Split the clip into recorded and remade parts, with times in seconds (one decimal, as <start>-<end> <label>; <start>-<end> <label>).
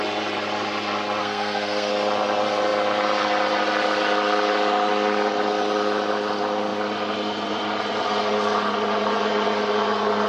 0.0-1.2 recorded; 1.2-1.9 remade; 1.9-10.3 recorded